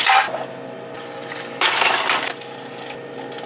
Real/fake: real